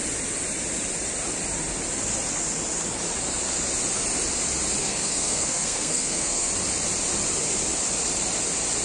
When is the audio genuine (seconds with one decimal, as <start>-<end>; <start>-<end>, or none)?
0.0-4.8; 6.5-8.8